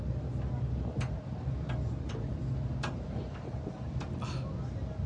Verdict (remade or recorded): recorded